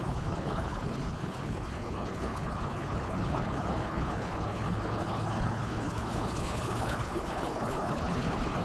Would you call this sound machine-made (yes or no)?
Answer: yes